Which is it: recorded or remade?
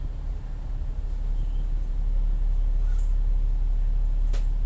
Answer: recorded